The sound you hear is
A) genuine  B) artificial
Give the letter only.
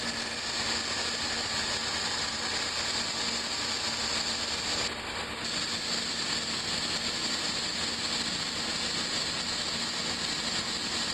A